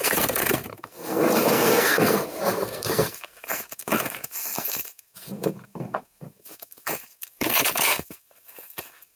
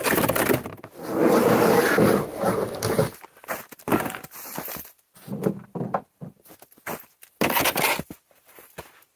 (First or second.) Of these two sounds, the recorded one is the second